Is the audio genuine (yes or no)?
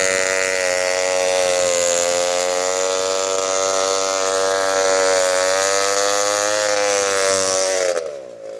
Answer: yes